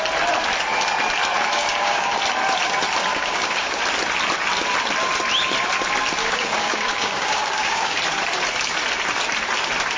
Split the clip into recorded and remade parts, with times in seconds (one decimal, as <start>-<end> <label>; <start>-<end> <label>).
0.0-1.6 recorded; 1.6-2.2 remade; 2.2-3.1 recorded; 3.1-3.8 remade; 3.8-6.2 recorded; 6.2-8.0 remade; 8.0-10.0 recorded